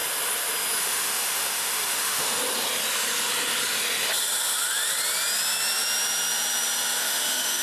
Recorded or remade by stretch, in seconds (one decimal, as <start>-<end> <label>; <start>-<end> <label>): 0.0-0.8 recorded; 0.8-2.4 remade; 2.4-7.0 recorded; 7.0-7.6 remade